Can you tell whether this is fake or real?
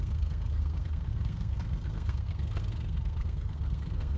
fake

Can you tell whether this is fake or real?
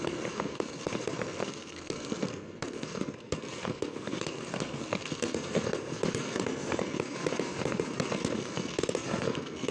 fake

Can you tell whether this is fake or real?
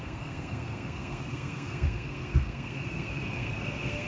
fake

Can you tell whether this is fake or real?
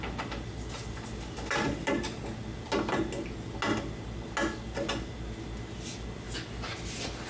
real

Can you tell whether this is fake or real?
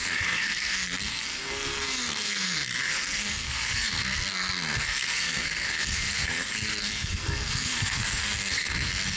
fake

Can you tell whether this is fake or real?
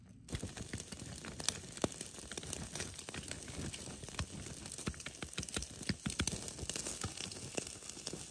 real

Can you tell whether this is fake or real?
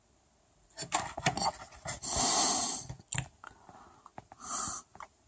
real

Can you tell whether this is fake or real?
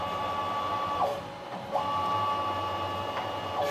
real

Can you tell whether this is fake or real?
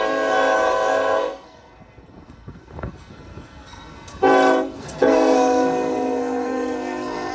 fake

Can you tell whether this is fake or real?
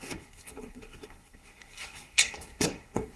fake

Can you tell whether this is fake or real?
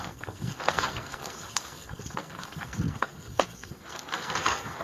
fake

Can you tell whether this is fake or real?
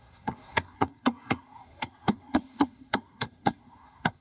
fake